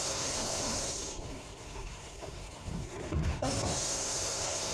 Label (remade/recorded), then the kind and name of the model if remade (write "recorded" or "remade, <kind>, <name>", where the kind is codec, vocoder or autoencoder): remade, codec, SNAC